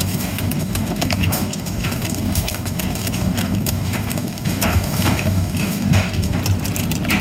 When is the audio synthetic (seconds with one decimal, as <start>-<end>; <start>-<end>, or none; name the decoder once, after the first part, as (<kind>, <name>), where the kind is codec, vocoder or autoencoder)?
0.0-6.4 (codec, DAC)